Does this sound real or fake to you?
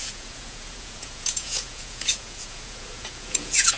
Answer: fake